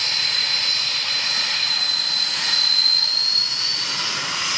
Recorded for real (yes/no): no